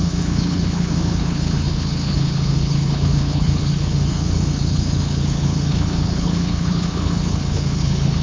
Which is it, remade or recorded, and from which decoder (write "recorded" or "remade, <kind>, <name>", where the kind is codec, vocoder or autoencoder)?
remade, codec, HILCodec